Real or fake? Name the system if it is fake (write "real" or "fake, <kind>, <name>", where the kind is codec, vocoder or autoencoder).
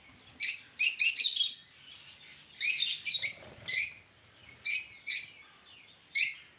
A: real